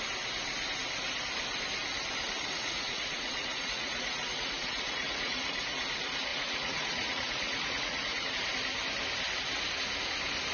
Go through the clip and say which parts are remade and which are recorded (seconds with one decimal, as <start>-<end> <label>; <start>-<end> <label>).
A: 0.0-2.4 recorded; 2.4-5.8 remade; 5.8-6.3 recorded; 6.3-8.3 remade; 8.3-10.5 recorded